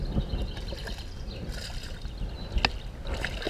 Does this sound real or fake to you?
real